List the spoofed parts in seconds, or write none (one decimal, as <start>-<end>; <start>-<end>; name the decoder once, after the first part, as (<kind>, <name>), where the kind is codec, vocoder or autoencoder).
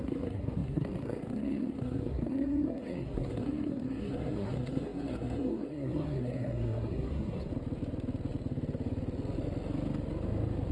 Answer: 0.0-7.5 (codec, SNAC)